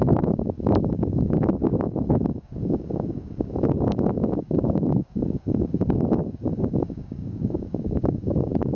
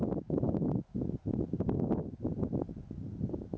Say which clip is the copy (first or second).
first